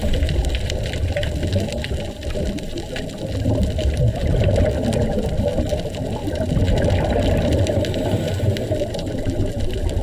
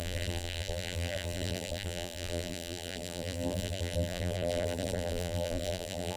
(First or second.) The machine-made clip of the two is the second